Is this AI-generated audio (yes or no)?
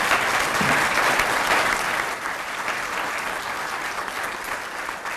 no